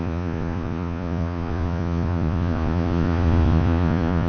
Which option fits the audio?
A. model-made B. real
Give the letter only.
A